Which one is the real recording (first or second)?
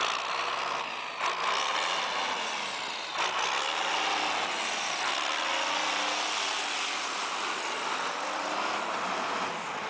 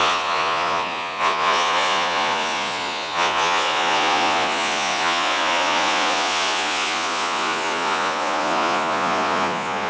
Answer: first